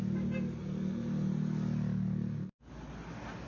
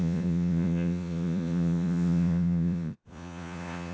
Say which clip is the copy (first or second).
second